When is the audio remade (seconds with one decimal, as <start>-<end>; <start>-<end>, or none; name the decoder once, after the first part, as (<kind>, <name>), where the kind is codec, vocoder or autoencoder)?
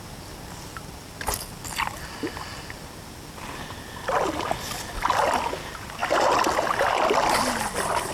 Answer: none